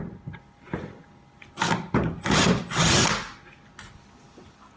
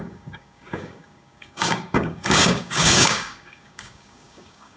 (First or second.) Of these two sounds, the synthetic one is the second